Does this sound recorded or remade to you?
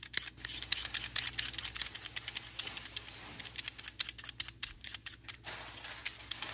recorded